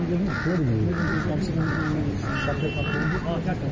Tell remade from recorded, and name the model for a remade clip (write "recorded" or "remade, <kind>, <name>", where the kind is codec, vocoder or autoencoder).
recorded